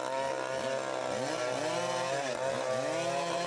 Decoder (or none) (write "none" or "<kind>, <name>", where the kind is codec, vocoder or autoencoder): none